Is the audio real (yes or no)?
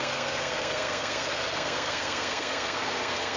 no